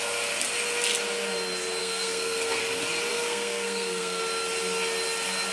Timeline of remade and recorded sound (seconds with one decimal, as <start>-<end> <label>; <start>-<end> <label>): 0.0-1.8 recorded; 1.8-2.6 remade; 2.6-3.1 recorded; 3.1-4.2 remade; 4.2-5.5 recorded